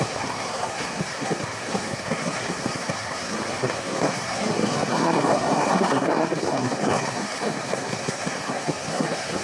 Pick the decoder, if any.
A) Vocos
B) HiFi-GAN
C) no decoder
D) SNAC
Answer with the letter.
D